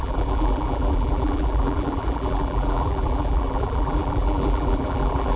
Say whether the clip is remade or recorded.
remade